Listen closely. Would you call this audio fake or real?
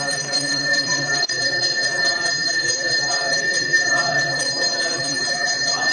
fake